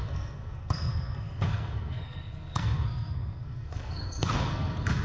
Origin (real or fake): fake